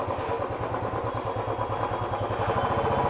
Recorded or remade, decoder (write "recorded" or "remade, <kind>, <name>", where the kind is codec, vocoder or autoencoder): recorded